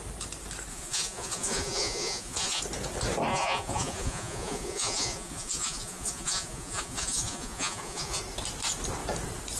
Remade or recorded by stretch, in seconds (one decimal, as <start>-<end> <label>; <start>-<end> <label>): 0.0-0.7 recorded; 0.7-2.6 remade; 2.6-3.3 recorded; 3.3-8.2 remade; 8.2-9.6 recorded